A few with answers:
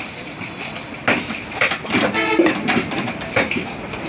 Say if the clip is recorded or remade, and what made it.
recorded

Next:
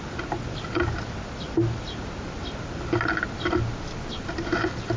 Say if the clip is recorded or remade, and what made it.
recorded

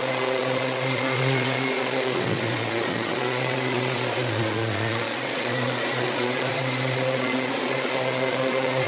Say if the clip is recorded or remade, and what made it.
remade, vocoder, Vocos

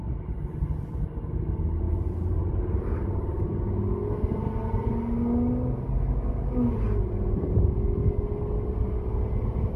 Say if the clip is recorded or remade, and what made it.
recorded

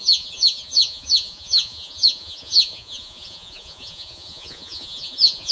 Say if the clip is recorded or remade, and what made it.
remade, vocoder, Vocos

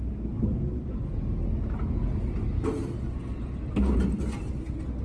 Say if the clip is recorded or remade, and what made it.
recorded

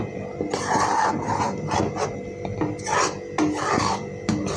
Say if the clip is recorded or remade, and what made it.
recorded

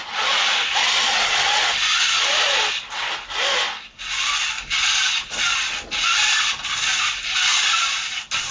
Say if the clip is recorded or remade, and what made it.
recorded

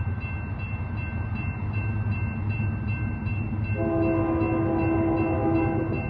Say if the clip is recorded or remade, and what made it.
recorded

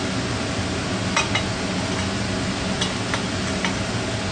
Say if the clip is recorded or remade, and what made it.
recorded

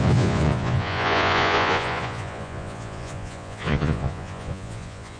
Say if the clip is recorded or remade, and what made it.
remade, vocoder, Vocos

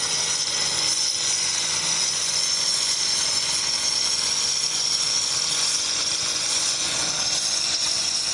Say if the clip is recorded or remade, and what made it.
remade, vocoder, Vocos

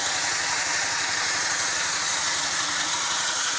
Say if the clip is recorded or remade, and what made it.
remade, vocoder, Vocos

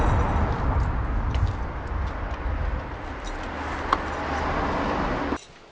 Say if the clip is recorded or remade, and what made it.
recorded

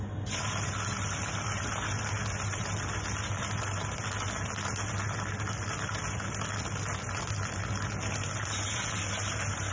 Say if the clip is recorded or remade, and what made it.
recorded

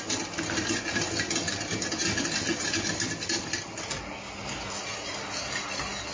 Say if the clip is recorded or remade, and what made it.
recorded